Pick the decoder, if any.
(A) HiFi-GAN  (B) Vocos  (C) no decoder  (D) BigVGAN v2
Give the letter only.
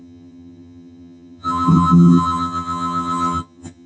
A